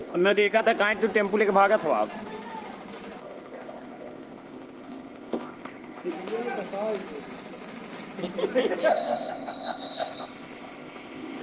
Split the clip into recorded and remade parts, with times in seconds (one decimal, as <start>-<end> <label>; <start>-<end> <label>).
0.0-0.6 remade; 0.6-3.2 recorded; 3.2-6.1 remade; 6.1-8.9 recorded; 8.9-11.4 remade